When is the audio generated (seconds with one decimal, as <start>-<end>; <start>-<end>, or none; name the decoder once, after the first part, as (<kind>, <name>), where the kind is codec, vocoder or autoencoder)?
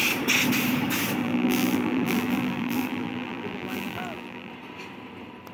1.2-4.5 (vocoder, BigVGAN v2)